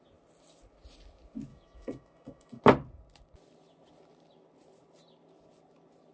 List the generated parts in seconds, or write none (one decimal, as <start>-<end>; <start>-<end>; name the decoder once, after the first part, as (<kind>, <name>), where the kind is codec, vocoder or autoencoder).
1.5-2.6 (autoencoder, DAC-VAE)